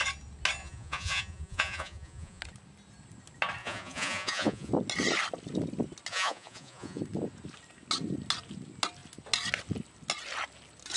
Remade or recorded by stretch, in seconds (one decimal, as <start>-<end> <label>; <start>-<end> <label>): 0.0-0.6 recorded; 0.6-2.4 remade; 2.4-3.6 recorded; 3.6-4.7 remade; 4.7-6.1 recorded; 6.1-7.0 remade; 7.0-11.0 recorded